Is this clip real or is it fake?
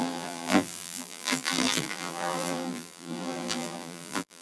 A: fake